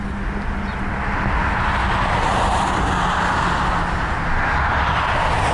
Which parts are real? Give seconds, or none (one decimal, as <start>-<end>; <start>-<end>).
0.0-5.5

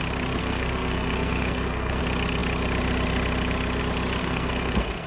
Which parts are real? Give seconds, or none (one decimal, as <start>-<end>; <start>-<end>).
0.0-0.4; 2.0-4.2

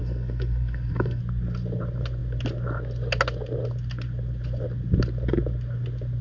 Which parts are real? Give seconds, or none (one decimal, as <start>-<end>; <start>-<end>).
1.2-6.2

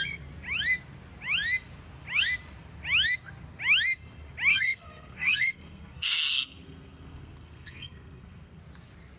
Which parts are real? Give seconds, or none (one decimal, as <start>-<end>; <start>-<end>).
0.0-4.5; 8.6-9.2

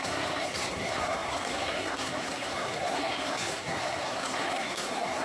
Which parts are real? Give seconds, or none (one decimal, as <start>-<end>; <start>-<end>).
none

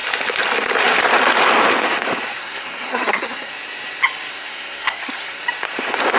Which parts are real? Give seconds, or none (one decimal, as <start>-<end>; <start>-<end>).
0.0-2.4; 3.5-4.3; 5.4-6.2